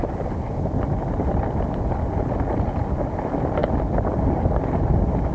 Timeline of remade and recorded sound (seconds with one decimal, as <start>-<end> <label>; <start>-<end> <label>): 0.0-5.3 recorded